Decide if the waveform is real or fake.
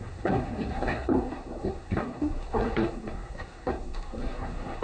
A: fake